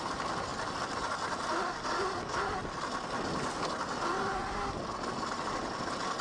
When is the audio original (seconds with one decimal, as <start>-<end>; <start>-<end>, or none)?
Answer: 0.0-6.2